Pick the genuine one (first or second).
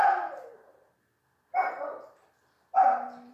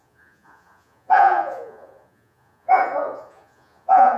first